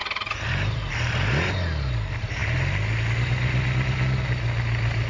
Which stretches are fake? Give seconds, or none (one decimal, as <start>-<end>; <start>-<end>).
none